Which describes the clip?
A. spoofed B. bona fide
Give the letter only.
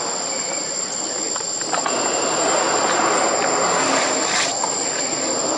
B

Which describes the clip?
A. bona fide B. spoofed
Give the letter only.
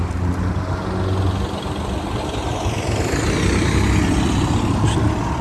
A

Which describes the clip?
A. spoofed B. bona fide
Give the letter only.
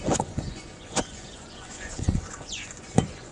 A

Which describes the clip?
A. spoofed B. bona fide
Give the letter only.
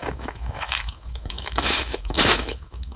A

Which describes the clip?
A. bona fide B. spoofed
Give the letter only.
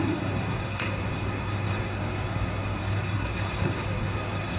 B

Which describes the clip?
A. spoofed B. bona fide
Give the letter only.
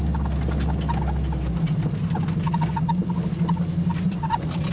B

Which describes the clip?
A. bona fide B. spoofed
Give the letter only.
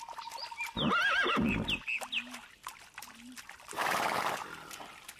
A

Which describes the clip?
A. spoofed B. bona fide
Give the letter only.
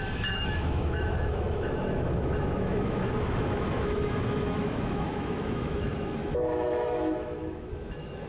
A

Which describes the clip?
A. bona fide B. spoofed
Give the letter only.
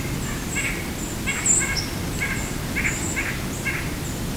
A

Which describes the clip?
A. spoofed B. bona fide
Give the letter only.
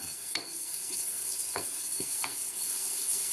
A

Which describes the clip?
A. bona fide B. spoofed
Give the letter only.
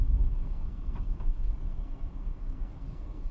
B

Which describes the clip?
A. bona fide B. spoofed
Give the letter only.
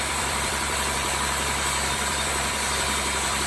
B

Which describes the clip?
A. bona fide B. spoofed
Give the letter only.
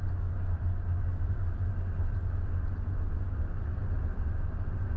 A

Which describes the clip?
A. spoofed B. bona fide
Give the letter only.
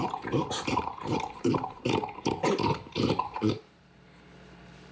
A